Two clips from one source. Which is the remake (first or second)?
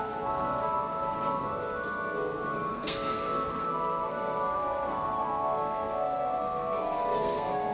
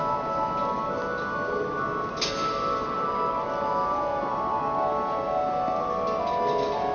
first